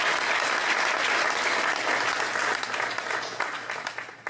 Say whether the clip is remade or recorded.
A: recorded